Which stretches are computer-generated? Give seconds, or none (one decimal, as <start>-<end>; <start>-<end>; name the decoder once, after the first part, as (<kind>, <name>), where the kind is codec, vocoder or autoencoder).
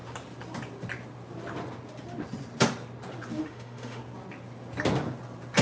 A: 3.4-4.0 (autoencoder, DAC-VAE)